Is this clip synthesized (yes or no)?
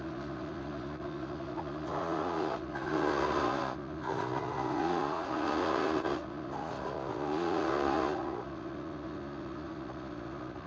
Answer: yes